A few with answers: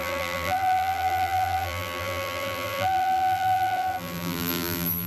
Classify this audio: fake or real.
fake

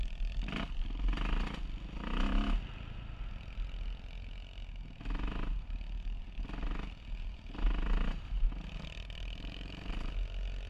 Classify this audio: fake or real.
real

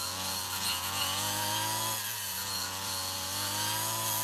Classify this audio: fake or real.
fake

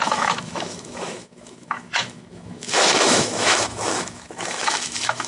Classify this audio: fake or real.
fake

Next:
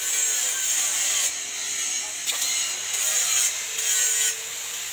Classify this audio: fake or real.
real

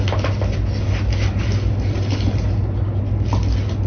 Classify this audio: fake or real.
real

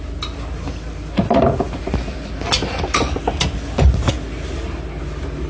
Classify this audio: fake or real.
real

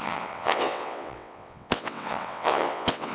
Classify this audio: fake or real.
fake